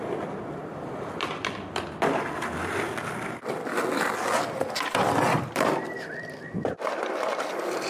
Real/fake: real